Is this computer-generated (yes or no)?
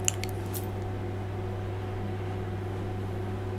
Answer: no